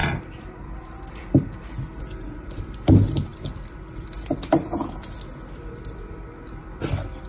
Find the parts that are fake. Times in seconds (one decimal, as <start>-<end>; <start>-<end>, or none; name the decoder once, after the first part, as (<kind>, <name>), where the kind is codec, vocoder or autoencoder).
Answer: none